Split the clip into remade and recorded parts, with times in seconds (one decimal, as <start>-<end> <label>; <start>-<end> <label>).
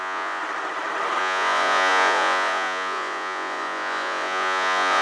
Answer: 0.0-0.4 remade; 0.4-1.2 recorded; 1.2-5.0 remade